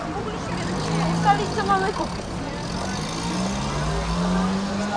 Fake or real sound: real